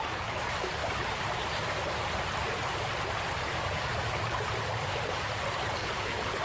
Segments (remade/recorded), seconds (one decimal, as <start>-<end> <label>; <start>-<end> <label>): 0.0-5.8 recorded; 5.8-6.4 remade